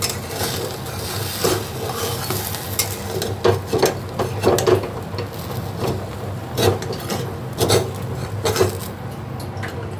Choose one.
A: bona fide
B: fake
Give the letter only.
A